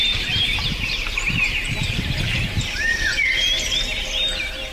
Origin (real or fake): fake